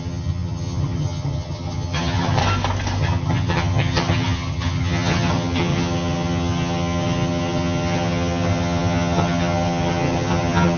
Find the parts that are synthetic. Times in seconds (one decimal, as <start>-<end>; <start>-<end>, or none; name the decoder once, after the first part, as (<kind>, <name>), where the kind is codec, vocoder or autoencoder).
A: 0.0-2.4 (vocoder, HiFi-GAN); 3.0-10.8